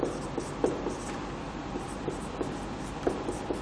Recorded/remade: remade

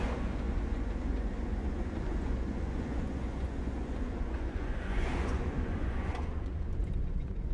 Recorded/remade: remade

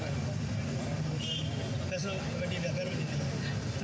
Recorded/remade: recorded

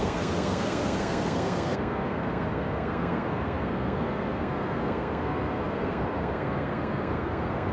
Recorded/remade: remade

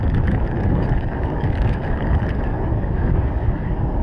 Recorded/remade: remade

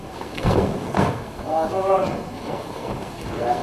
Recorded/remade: remade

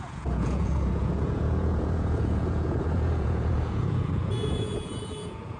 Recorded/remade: remade